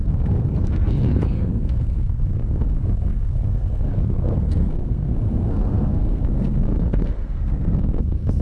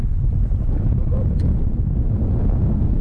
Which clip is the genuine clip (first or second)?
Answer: second